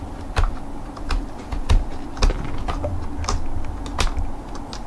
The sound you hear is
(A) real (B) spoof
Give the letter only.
A